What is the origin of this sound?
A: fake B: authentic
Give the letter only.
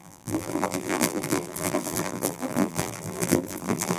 A